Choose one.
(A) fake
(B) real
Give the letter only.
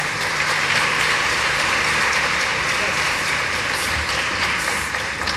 A